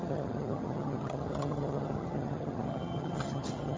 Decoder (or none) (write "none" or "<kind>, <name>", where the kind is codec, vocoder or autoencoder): vocoder, HiFi-GAN